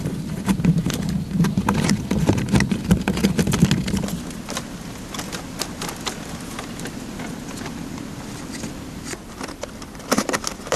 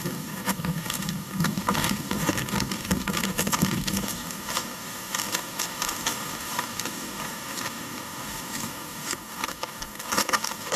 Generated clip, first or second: second